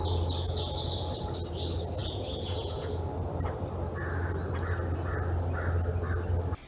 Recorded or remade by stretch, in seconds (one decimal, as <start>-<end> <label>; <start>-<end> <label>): 0.0-2.0 recorded; 2.0-2.8 remade; 2.8-6.7 recorded